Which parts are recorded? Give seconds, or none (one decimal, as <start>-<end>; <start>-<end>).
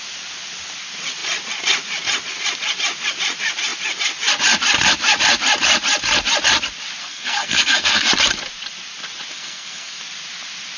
0.0-7.0; 8.1-9.3; 10.0-10.8